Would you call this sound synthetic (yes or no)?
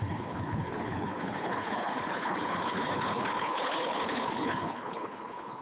yes